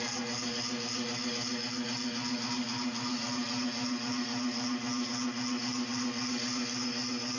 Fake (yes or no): no